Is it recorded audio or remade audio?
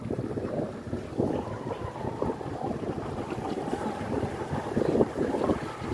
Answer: remade